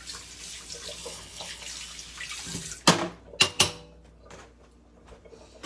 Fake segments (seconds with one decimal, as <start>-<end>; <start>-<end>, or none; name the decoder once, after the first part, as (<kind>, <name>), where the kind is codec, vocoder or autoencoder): 1.0-1.6 (codec, HILCodec)

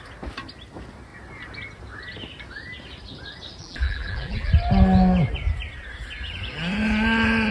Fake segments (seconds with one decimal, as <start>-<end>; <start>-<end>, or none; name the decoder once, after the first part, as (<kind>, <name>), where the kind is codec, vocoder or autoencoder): 3.6-4.5 (vocoder, BigVGAN v2)

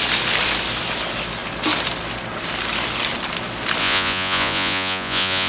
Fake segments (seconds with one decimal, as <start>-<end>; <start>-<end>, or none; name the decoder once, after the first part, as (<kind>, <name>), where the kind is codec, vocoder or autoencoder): 3.8-5.5 (vocoder, Vocos)

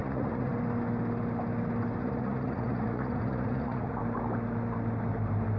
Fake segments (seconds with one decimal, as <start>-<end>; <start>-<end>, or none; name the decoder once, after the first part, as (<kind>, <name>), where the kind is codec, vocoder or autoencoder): 0.0-0.5 (vocoder, Vocos); 2.0-4.0

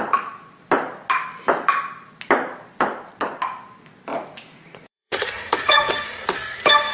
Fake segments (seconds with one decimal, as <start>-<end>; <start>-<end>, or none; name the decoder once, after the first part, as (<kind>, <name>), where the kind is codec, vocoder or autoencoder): 4.1-5.9 (vocoder, Vocos)

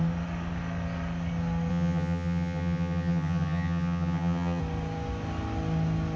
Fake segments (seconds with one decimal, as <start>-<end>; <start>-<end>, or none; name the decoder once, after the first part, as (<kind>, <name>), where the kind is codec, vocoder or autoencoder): 1.7-4.6 (vocoder, HiFi-GAN)